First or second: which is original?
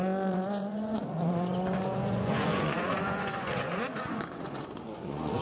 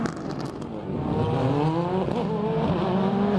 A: second